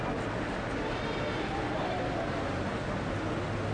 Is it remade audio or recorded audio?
recorded